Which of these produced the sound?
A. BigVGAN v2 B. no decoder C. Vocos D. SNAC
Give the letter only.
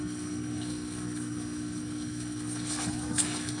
D